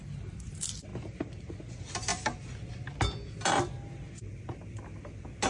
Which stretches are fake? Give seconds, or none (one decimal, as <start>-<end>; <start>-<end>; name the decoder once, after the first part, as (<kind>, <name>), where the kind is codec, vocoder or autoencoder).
none